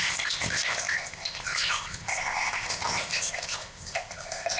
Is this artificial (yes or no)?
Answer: yes